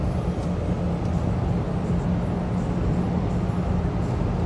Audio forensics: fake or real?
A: real